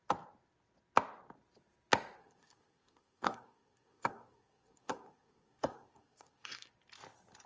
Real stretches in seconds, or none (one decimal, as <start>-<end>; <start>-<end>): 0.0-2.2; 6.7-7.5